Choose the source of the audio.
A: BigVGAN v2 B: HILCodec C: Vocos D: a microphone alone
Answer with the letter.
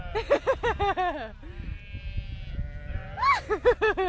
D